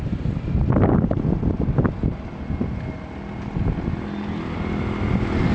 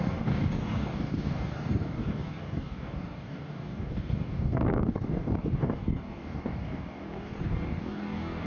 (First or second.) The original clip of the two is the first